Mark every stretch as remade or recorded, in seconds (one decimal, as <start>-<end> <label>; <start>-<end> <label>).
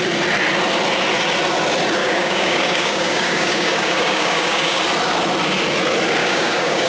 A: 0.0-2.0 recorded; 2.0-4.8 remade; 4.8-6.2 recorded; 6.2-6.9 remade